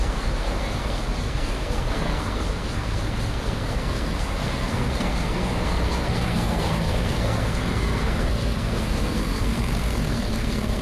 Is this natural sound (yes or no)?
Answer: no